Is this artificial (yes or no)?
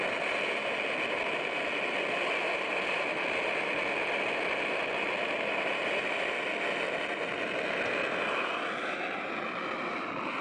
no